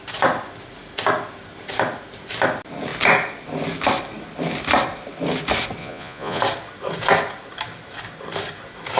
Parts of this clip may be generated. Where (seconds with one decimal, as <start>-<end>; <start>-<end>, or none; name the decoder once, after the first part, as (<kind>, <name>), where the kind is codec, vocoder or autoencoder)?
5.8-6.4 (vocoder, Vocos)